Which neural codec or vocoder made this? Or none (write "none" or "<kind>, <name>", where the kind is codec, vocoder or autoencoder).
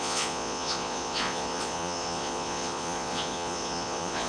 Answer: vocoder, Vocos